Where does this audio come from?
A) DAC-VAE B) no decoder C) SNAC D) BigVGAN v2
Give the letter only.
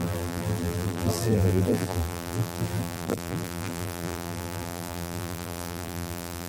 D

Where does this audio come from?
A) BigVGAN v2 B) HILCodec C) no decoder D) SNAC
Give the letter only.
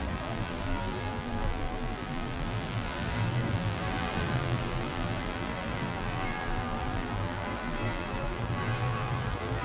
A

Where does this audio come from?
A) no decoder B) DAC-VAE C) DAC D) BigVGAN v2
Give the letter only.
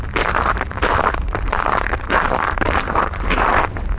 D